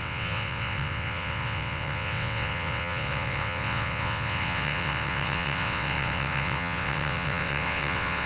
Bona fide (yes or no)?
no